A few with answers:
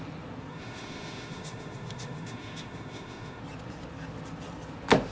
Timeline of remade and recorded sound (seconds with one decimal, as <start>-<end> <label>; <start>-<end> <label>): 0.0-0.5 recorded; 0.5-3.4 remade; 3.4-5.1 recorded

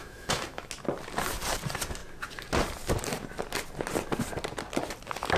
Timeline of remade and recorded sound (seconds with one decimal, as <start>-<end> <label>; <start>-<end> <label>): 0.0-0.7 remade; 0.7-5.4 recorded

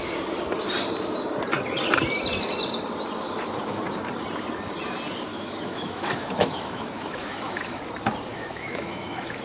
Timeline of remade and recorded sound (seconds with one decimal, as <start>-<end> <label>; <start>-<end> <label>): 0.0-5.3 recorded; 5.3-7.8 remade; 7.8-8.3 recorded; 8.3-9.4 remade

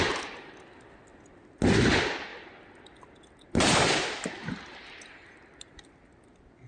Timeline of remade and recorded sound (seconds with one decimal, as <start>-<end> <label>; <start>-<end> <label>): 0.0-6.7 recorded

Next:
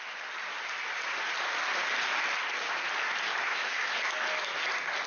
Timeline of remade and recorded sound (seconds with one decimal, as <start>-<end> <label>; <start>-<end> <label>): 0.0-3.3 recorded; 3.3-3.9 remade; 3.9-5.1 recorded